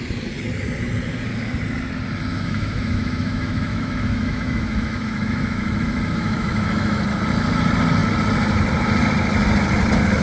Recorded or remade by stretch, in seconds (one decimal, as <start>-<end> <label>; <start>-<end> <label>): 0.0-2.3 recorded; 2.3-7.0 remade; 7.0-10.2 recorded

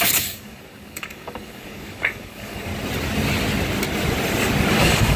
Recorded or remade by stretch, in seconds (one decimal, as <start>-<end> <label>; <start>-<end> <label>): 0.0-2.7 remade; 2.7-4.8 recorded; 4.8-5.2 remade

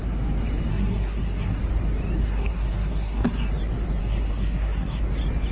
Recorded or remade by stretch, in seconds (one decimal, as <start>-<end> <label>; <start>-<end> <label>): 0.0-0.7 recorded; 0.7-1.6 remade; 1.6-2.2 recorded; 2.2-3.5 remade; 3.5-4.0 recorded; 4.0-5.0 remade; 5.0-5.5 recorded

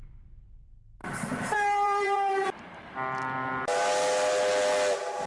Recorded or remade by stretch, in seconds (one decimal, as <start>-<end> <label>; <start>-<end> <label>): 0.0-1.0 recorded; 1.0-2.7 remade; 2.7-5.3 recorded

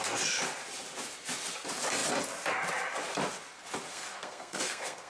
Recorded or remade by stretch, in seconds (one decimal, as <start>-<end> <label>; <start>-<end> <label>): 0.0-3.9 recorded; 3.9-5.1 remade

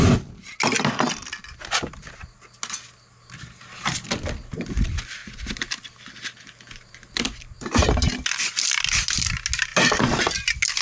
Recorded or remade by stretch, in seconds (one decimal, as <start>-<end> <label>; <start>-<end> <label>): 0.0-9.7 recorded; 9.7-10.2 remade; 10.2-10.8 recorded

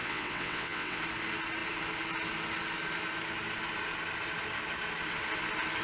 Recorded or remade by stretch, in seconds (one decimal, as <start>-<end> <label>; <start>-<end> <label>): 0.0-1.0 remade; 1.0-5.8 recorded

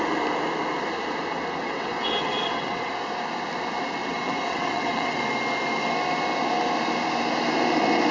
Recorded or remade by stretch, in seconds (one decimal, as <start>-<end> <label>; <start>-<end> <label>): 0.0-1.6 recorded; 1.6-2.9 remade; 2.9-4.0 recorded; 4.0-5.2 remade; 5.2-8.1 recorded